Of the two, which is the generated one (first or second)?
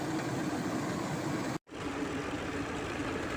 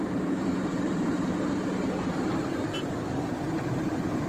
second